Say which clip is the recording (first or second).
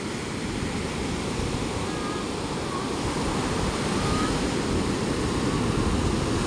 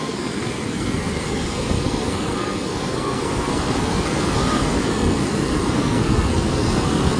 first